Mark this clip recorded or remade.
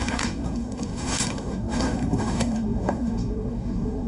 remade